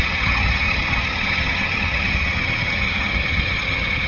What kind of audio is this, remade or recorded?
remade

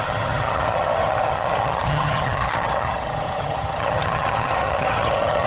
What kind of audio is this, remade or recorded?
remade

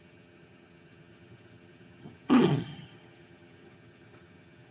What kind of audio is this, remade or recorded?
remade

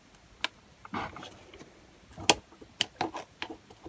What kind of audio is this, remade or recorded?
recorded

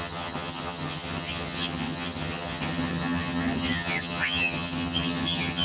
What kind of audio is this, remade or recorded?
remade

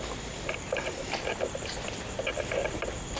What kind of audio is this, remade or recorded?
recorded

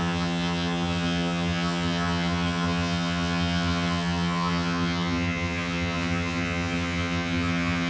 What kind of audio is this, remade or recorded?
remade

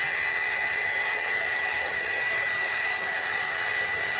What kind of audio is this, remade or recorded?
remade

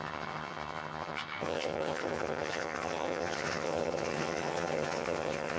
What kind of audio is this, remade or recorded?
remade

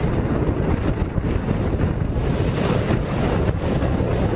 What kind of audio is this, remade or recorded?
recorded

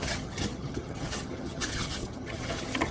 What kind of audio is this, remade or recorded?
remade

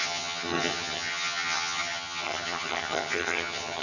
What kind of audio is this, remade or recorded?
remade